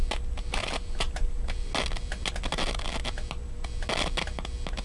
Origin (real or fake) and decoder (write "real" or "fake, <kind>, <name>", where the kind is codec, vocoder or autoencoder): real